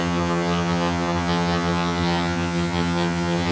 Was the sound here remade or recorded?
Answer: remade